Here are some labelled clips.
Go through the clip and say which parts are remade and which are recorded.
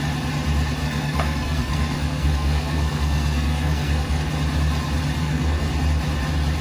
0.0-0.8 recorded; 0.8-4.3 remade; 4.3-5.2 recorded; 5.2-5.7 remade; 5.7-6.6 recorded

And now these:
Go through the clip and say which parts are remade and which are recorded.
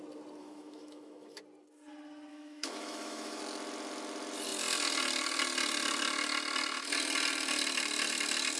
0.0-0.4 recorded; 0.4-1.4 remade; 1.4-2.3 recorded; 2.3-3.4 remade; 3.4-8.6 recorded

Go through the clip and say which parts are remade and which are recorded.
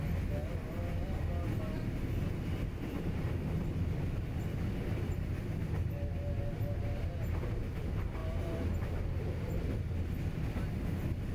0.0-11.3 recorded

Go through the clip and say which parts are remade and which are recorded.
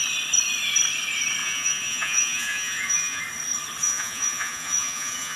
0.0-1.4 recorded; 1.4-3.2 remade; 3.2-3.8 recorded; 3.8-5.4 remade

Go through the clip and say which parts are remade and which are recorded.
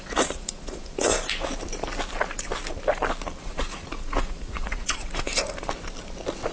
0.0-1.1 remade; 1.1-3.4 recorded; 3.4-5.3 remade; 5.3-6.5 recorded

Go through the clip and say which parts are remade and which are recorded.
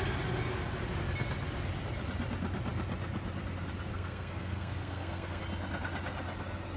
0.0-3.9 recorded; 3.9-5.4 remade; 5.4-6.8 recorded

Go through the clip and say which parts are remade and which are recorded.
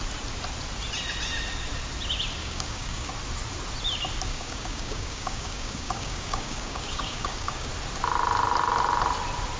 0.0-2.4 recorded; 2.4-3.1 remade; 3.1-4.3 recorded; 4.3-7.7 remade; 7.7-9.6 recorded